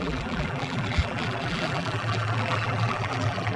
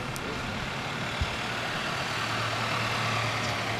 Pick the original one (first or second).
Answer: second